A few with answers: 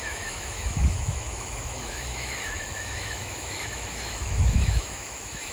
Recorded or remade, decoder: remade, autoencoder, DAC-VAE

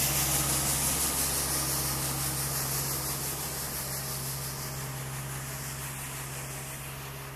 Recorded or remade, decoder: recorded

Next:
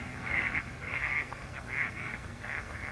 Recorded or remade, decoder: remade, codec, SNAC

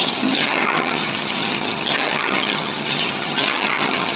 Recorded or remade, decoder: remade, vocoder, HiFi-GAN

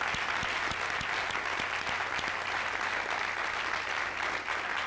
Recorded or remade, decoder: recorded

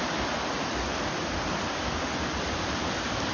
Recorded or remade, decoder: recorded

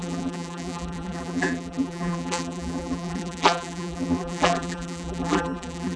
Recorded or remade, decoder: remade, vocoder, BigVGAN v2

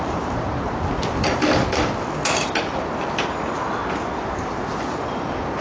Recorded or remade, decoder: recorded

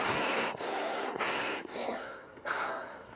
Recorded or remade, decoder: remade, codec, SNAC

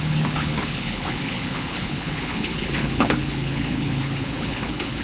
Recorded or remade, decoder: remade, codec, HILCodec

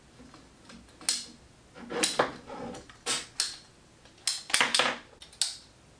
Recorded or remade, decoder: recorded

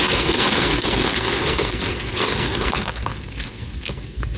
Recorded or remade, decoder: remade, codec, SNAC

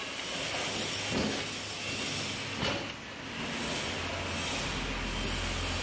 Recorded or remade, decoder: recorded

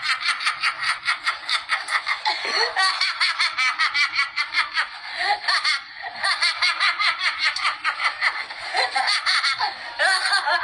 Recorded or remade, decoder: recorded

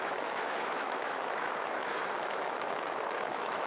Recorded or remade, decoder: remade, autoencoder, DAC-VAE